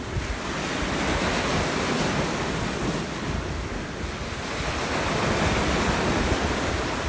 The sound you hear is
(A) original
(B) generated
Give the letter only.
A